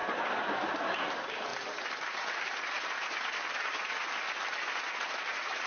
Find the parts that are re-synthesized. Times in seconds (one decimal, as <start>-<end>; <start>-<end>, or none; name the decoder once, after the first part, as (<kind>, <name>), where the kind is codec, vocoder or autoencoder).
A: none